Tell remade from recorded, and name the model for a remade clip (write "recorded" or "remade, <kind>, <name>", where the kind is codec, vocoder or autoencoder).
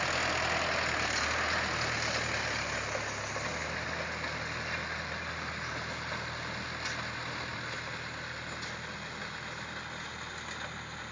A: recorded